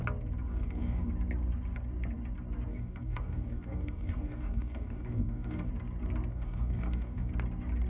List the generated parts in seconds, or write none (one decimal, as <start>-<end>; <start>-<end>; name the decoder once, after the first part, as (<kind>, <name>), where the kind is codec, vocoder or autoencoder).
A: 0.5-1.1 (codec, DAC); 2.7-5.7; 6.3-7.3